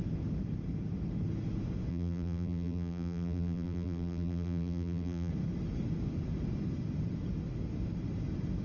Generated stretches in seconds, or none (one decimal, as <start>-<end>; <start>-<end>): 1.9-5.3